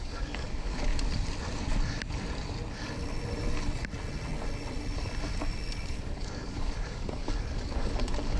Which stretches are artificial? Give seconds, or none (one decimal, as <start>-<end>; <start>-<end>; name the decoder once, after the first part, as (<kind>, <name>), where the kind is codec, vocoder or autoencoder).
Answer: 0.0-0.9 (codec, DAC); 5.9-8.4